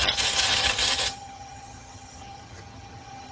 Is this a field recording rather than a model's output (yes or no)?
no